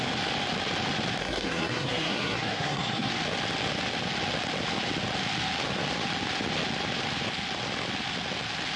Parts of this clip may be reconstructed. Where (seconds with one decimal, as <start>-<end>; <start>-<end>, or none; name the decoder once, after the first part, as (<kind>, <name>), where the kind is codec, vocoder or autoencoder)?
1.2-3.1 (codec, SNAC)